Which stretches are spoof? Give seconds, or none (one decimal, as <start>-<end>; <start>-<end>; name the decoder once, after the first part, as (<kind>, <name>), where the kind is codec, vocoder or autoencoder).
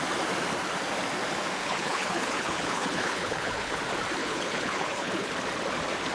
1.6-3.8 (codec, HILCodec); 4.2-5.3